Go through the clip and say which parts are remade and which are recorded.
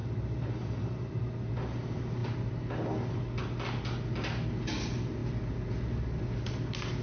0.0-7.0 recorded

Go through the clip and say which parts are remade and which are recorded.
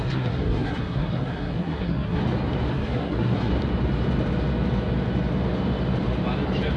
0.0-2.2 remade; 2.2-2.7 recorded; 2.7-3.5 remade; 3.5-6.8 recorded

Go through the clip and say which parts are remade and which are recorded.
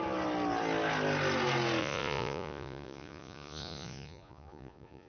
0.0-1.8 recorded; 1.8-5.1 remade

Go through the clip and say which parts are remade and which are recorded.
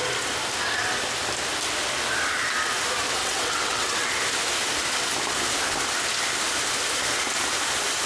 0.0-3.2 recorded; 3.2-4.1 remade; 4.1-8.1 recorded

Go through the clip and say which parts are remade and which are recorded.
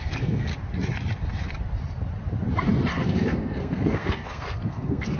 0.0-0.5 remade; 0.5-3.0 recorded; 3.0-5.2 remade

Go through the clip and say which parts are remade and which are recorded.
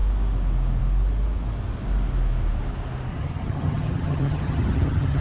0.0-3.1 recorded; 3.1-5.2 remade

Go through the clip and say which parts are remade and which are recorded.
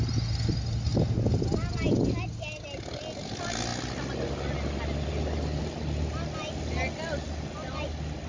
0.0-8.3 recorded